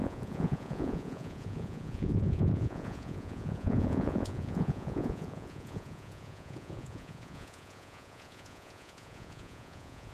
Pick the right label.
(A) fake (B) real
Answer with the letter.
A